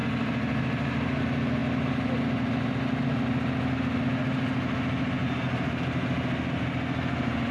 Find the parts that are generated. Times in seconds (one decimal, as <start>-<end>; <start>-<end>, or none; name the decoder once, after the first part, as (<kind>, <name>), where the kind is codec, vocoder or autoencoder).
none